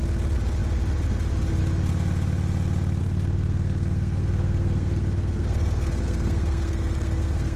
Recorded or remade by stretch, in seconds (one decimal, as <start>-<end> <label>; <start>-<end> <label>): 0.0-3.0 recorded; 3.0-7.6 remade